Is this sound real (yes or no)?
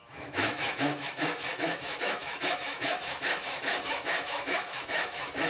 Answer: no